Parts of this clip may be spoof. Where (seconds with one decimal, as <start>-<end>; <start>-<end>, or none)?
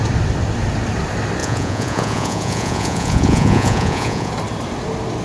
1.4-4.3